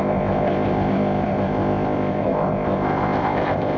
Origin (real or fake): fake